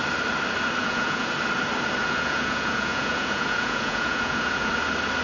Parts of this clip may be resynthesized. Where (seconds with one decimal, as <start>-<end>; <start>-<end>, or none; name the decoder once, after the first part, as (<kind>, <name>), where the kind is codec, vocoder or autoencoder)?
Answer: 0.8-1.3 (vocoder, Vocos); 2.0-4.7